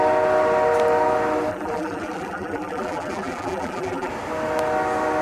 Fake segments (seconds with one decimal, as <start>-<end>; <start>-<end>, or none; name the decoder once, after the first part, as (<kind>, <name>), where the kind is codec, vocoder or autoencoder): 1.5-4.1 (vocoder, BigVGAN v2)